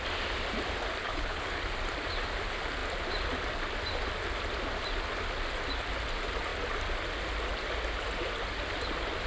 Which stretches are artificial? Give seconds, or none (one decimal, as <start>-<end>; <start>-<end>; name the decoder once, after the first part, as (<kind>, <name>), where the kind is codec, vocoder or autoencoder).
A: 1.0-1.6 (codec, HILCodec)

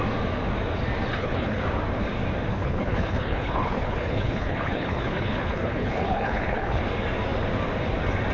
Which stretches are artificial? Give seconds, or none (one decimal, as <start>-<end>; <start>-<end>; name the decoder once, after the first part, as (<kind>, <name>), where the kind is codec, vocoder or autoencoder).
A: 1.1-1.6 (codec, HILCodec); 2.5-6.8